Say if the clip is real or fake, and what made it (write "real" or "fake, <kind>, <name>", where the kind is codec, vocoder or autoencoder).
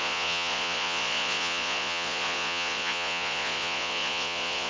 fake, vocoder, Vocos